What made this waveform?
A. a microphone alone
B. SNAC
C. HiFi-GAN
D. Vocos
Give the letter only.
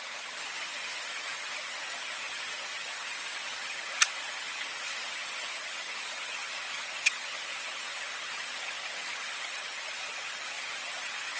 C